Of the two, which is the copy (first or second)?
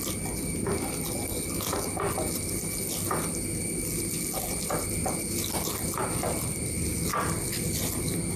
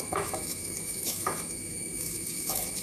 second